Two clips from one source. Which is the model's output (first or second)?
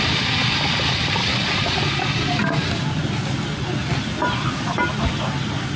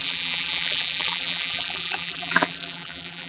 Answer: second